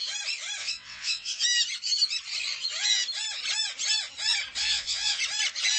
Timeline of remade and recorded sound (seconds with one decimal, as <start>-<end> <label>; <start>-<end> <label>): 0.0-0.6 recorded; 0.6-1.4 remade; 1.4-4.6 recorded; 4.6-5.2 remade; 5.2-5.8 recorded